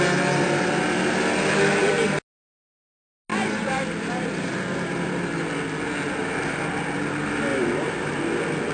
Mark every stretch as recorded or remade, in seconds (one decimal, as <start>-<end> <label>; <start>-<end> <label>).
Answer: 0.0-3.3 recorded; 3.3-5.2 remade; 5.2-7.5 recorded; 7.5-8.2 remade; 8.2-8.7 recorded